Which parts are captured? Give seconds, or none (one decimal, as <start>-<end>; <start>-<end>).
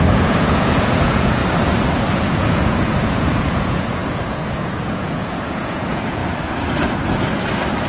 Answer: 1.4-2.2; 6.2-7.9